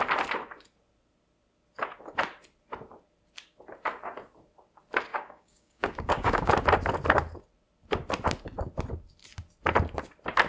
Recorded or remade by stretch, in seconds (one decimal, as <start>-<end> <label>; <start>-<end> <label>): 0.0-5.1 recorded; 5.1-6.5 remade; 6.5-10.5 recorded